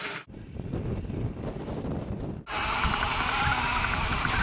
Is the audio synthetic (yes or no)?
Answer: no